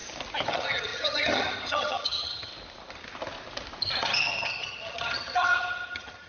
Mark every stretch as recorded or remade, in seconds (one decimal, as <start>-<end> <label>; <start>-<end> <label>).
0.0-0.5 recorded; 0.5-2.5 remade; 2.5-4.0 recorded; 4.0-6.3 remade